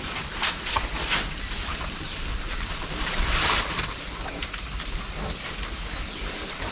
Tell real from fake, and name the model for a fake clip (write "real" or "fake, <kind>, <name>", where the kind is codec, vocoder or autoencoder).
real